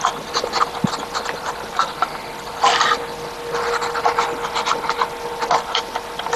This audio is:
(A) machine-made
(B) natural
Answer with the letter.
B